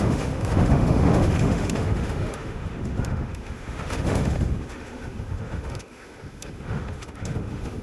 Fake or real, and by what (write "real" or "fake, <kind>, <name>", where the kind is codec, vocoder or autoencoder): fake, autoencoder, DAC-VAE